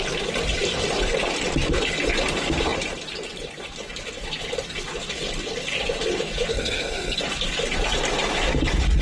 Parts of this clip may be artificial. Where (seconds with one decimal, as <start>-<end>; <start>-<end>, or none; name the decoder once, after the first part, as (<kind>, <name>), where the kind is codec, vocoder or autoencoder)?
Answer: 6.5-7.2 (codec, SNAC)